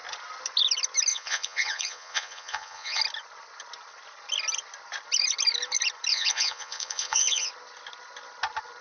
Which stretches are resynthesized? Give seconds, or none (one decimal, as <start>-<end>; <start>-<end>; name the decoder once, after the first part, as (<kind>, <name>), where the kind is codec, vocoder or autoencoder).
1.1-3.0 (vocoder, Vocos); 6.1-7.5